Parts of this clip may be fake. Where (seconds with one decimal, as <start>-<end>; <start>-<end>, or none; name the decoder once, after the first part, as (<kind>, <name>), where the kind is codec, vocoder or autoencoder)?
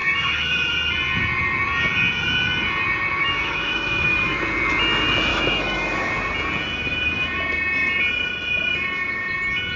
0.0-0.7 (autoencoder, DAC-VAE); 3.2-4.4; 5.3-6.1